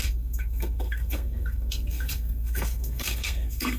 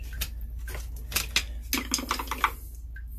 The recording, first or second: second